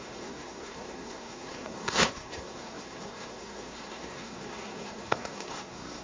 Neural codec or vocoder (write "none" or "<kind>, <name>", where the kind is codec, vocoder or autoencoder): codec, SNAC